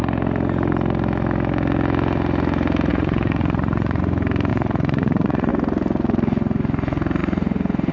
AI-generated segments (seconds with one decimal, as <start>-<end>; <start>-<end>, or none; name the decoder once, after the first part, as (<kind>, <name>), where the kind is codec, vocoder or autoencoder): 2.9-4.0 (vocoder, Vocos); 4.5-5.5